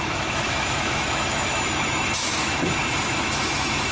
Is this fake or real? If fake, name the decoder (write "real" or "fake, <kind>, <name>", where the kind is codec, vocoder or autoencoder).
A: fake, autoencoder, DAC-VAE